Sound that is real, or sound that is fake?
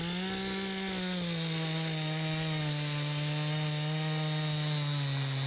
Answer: real